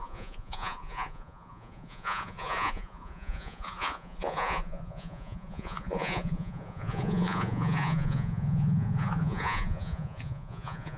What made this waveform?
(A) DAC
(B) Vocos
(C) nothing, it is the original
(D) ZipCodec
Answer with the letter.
B